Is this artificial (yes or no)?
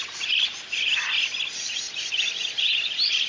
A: no